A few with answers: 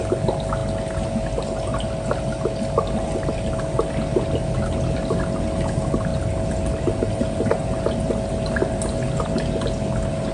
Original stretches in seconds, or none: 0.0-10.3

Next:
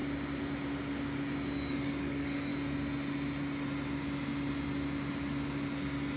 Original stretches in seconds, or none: 0.0-1.7; 2.5-6.2

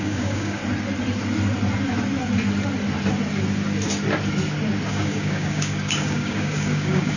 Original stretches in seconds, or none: 0.6-4.9

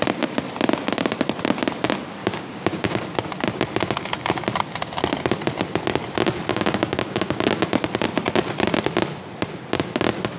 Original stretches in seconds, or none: 0.0-2.2; 3.1-6.5; 7.7-10.4